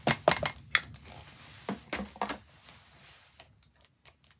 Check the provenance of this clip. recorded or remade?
recorded